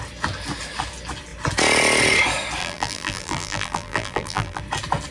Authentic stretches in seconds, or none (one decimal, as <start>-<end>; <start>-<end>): 0.0-2.6; 4.6-5.1